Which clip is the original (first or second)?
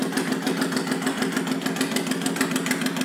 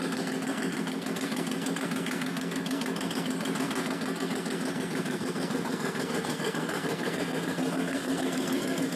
first